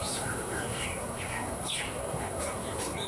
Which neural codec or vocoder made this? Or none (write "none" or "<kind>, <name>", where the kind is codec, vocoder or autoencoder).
codec, SNAC